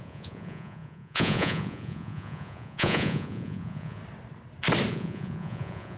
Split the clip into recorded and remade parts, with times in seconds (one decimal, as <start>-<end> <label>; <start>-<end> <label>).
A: 0.0-4.0 remade; 4.0-4.9 recorded; 4.9-6.0 remade